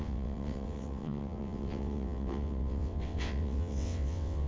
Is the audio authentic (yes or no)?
no